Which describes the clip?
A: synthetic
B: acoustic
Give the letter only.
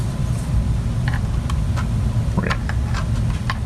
B